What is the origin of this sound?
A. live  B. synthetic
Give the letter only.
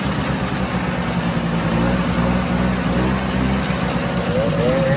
A